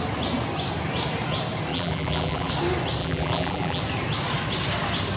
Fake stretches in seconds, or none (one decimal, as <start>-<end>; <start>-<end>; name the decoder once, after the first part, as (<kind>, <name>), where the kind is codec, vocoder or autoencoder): 1.7-2.5 (vocoder, BigVGAN v2); 3.0-3.8